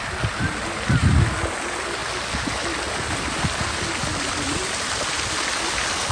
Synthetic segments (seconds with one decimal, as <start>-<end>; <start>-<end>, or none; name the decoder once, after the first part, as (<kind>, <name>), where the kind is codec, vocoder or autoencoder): none